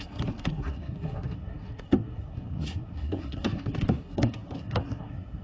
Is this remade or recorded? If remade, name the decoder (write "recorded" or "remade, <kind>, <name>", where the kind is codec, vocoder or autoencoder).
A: remade, codec, SNAC